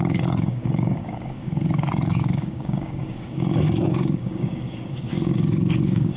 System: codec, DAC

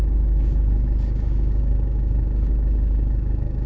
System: codec, DAC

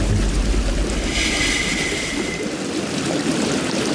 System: none